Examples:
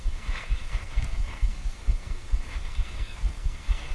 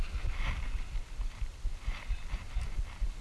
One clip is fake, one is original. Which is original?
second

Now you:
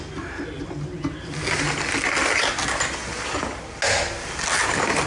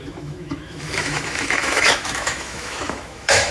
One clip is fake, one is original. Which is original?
first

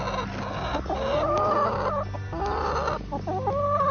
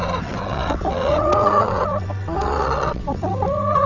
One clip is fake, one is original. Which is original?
first